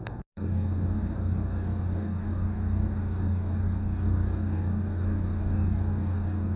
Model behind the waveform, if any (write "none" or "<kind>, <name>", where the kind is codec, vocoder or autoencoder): codec, DAC